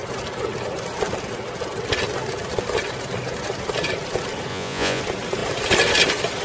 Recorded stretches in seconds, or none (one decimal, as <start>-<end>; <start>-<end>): 0.0-4.5; 5.0-6.4